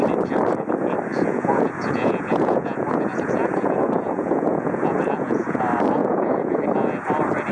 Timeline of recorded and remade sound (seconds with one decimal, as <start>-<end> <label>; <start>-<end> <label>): 0.0-1.1 recorded; 1.1-5.6 remade; 5.6-6.0 recorded; 6.0-6.6 remade; 6.6-7.5 recorded